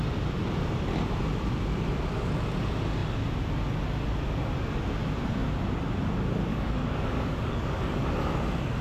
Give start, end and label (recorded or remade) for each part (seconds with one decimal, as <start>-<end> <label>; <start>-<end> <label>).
0.0-6.5 recorded; 6.5-8.1 remade; 8.1-8.8 recorded

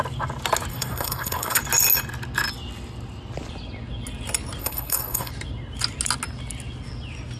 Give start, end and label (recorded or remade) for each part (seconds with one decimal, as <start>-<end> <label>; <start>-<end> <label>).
0.0-0.7 recorded; 0.7-1.6 remade; 1.6-4.6 recorded; 4.6-5.3 remade; 5.3-7.4 recorded

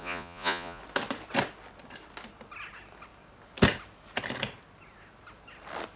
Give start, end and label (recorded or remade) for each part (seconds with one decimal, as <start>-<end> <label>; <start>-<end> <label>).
0.0-0.8 remade; 0.8-6.0 recorded

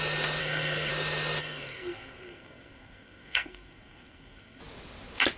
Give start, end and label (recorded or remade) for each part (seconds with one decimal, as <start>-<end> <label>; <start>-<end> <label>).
0.0-0.4 recorded; 0.4-0.9 remade; 0.9-1.4 recorded; 1.4-4.6 remade; 4.6-5.4 recorded

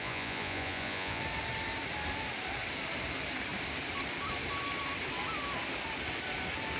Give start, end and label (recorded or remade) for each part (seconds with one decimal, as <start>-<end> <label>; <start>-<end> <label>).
0.0-1.2 remade; 1.2-6.8 recorded